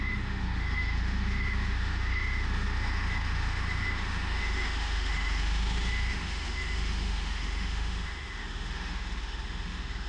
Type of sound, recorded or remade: remade